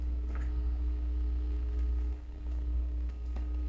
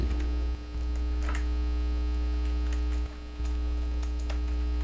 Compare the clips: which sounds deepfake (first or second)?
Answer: first